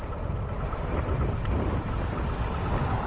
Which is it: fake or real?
real